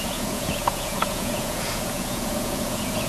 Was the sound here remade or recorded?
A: remade